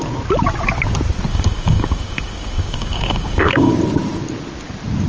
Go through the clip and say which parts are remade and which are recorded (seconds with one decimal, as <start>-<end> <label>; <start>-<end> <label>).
0.0-1.3 recorded; 1.3-3.7 remade; 3.7-5.1 recorded